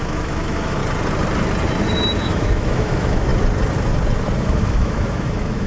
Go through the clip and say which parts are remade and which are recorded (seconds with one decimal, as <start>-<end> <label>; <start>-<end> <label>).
0.0-0.8 remade; 0.8-2.2 recorded; 2.2-3.3 remade; 3.3-4.4 recorded; 4.4-5.7 remade